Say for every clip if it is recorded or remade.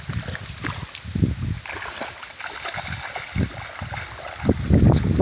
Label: recorded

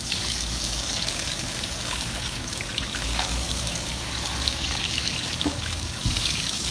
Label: remade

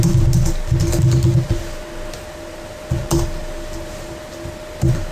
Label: recorded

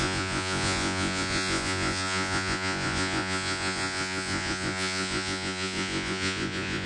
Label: remade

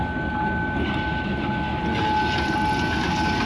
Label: recorded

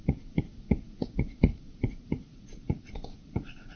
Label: remade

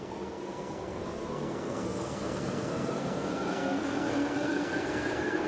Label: remade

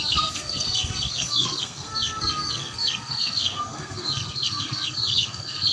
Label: remade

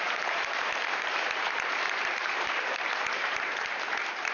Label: remade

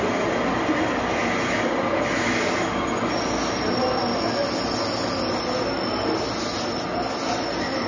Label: recorded